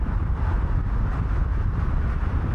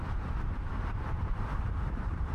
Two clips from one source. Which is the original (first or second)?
first